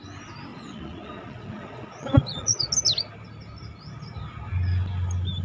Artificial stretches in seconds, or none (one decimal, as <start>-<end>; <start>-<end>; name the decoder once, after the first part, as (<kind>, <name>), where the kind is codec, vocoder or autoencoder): 0.5-2.7 (vocoder, Vocos)